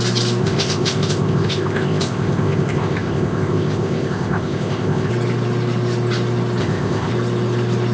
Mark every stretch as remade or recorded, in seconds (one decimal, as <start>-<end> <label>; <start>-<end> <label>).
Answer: 0.0-0.4 recorded; 0.4-5.1 remade; 5.1-6.6 recorded; 6.6-7.1 remade; 7.1-7.9 recorded